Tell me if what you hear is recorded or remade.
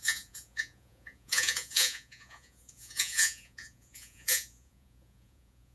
remade